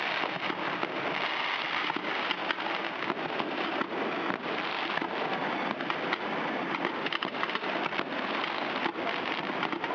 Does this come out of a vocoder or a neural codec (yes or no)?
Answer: no